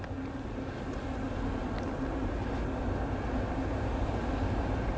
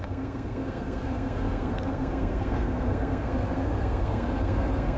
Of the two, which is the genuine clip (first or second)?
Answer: first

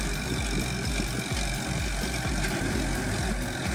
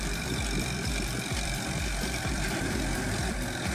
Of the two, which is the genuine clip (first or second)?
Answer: first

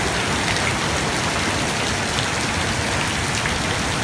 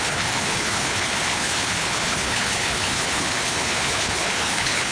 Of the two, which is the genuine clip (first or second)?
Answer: first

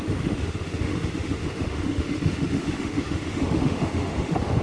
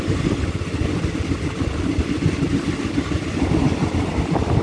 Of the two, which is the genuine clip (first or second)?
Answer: second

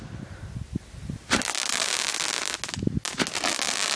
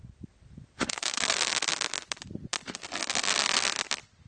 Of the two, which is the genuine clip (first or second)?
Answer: first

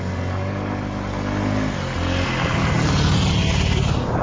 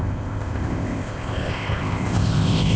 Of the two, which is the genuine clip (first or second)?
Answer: first